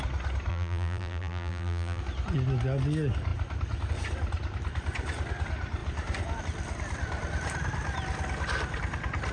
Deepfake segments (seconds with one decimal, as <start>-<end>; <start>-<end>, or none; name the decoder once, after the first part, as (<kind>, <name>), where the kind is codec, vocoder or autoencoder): 0.5-2.0 (vocoder, BigVGAN v2)